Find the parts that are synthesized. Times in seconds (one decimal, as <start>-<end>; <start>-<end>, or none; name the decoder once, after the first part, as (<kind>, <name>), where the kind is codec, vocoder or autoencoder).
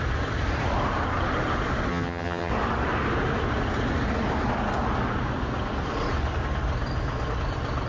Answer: 1.9-2.5 (vocoder, HiFi-GAN)